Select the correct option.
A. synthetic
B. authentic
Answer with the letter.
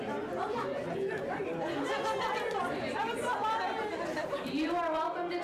B